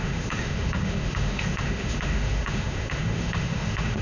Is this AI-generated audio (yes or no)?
yes